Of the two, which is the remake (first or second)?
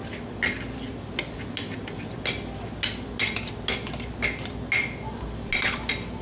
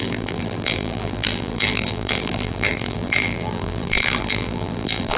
second